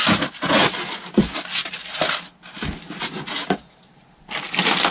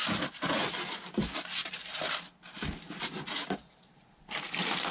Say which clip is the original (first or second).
first